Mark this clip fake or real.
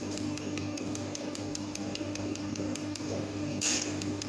fake